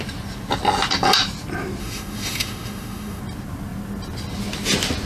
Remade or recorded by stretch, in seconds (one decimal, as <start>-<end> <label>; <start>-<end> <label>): 0.0-1.8 recorded; 1.8-3.2 remade; 3.2-5.1 recorded

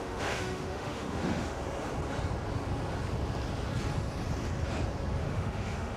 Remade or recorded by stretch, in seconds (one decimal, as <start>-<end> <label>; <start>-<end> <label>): 0.0-1.6 remade; 1.6-5.2 recorded; 5.2-6.0 remade

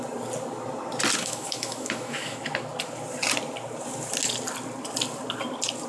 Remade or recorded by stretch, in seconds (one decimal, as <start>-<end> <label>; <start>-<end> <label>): 0.0-1.2 recorded; 1.2-2.4 remade; 2.4-5.9 recorded

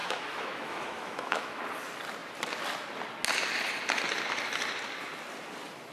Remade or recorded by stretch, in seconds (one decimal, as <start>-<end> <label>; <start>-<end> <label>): 0.0-1.6 remade; 1.6-5.9 recorded

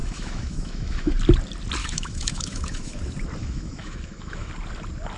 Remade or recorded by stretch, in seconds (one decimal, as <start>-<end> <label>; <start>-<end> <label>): 0.0-1.1 remade; 1.1-1.8 recorded; 1.8-3.0 remade; 3.0-3.4 recorded; 3.4-4.5 remade; 4.5-5.2 recorded

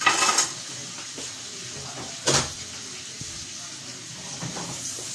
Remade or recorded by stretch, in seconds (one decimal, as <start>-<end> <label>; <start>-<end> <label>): 0.0-5.1 recorded

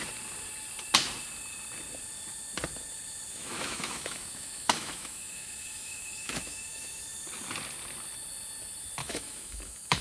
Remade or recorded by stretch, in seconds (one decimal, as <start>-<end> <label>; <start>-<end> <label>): 0.0-3.3 recorded; 3.3-7.0 remade; 7.0-9.0 recorded; 9.0-10.0 remade

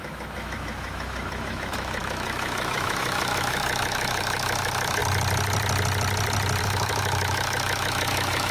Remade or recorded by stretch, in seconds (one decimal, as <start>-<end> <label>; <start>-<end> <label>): 0.0-5.0 remade; 5.0-6.6 recorded; 6.6-8.5 remade